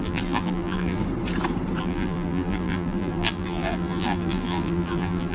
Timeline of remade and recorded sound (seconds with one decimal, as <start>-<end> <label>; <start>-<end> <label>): 0.0-1.0 remade; 1.0-1.8 recorded; 1.8-5.3 remade